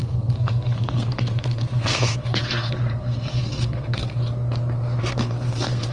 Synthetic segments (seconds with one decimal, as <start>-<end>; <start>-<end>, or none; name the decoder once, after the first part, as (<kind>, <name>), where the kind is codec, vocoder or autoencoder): 0.0-4.2 (codec, SNAC); 5.0-5.9